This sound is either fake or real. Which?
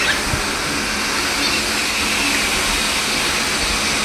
real